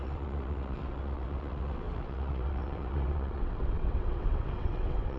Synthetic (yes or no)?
yes